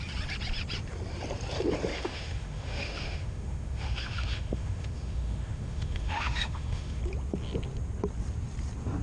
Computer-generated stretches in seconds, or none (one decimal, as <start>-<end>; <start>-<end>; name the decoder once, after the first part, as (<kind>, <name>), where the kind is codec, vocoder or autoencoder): 1.9-7.0 (autoencoder, DAC-VAE)